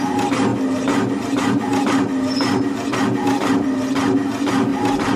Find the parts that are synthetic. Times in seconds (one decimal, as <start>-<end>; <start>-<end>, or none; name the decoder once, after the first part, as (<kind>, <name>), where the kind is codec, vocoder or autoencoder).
4.7-5.2 (vocoder, BigVGAN v2)